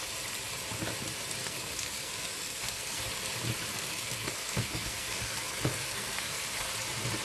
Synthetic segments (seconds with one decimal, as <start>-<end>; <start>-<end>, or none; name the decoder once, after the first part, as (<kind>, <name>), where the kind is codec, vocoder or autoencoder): 1.4-3.0 (codec, SNAC); 3.7-6.4